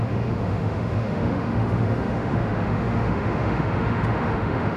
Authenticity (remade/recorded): remade